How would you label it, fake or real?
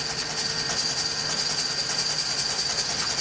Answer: real